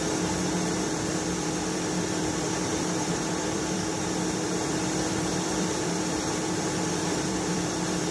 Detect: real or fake fake